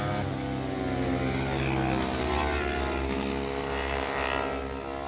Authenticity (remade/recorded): recorded